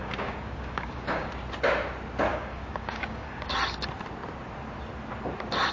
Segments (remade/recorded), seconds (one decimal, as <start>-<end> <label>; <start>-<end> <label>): 0.0-1.3 remade; 1.3-2.3 recorded; 2.3-3.5 remade; 3.5-5.7 recorded